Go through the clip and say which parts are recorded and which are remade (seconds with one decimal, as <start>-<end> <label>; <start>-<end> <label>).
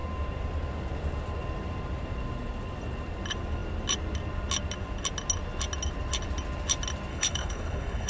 0.0-7.1 recorded; 7.1-8.1 remade